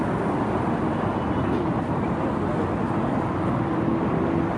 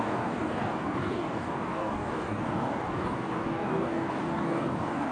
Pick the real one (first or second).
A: first